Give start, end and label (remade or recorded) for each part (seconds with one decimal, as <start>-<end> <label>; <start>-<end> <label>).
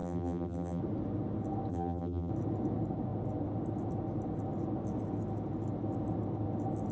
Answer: 0.0-0.8 remade; 0.8-1.7 recorded; 1.7-2.3 remade; 2.3-6.9 recorded